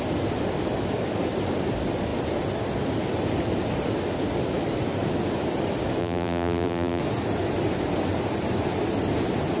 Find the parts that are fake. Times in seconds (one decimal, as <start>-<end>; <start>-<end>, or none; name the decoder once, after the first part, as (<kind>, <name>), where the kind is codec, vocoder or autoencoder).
6.0-7.0 (vocoder, BigVGAN v2)